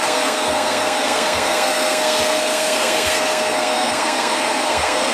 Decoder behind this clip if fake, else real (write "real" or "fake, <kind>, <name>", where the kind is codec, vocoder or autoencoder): fake, codec, SNAC